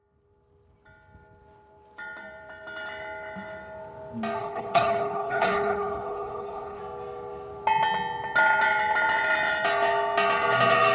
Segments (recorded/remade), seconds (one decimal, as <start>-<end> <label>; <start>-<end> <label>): 0.0-4.4 recorded; 4.4-6.8 remade; 6.8-10.9 recorded